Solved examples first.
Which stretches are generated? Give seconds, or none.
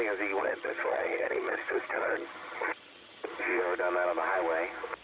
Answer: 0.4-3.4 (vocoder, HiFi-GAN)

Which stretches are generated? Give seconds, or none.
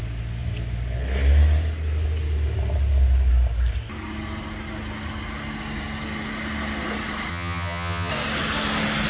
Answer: 7.3-8.1 (vocoder, HiFi-GAN)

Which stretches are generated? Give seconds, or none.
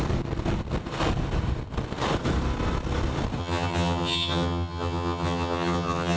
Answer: 3.4-6.2 (vocoder, HiFi-GAN)